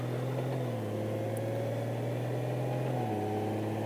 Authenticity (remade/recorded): recorded